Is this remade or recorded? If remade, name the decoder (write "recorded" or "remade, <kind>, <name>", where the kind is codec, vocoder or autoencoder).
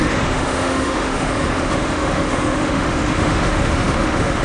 remade, autoencoder, DAC-VAE